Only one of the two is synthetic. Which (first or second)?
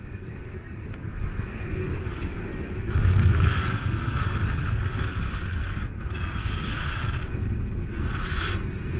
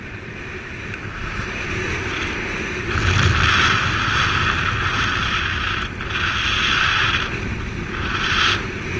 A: first